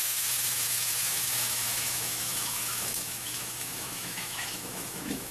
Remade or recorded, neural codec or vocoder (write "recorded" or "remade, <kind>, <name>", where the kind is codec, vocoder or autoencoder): remade, autoencoder, DAC-VAE